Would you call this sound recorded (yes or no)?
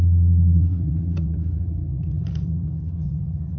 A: no